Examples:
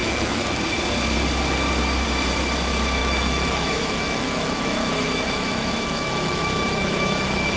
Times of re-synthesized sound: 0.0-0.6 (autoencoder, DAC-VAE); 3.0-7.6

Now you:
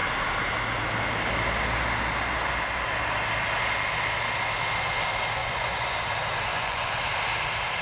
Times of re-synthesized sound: 5.4-6.0 (vocoder, Vocos); 6.5-7.0

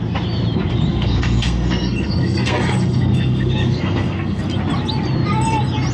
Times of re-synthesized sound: 0.9-4.4 (codec, SNAC)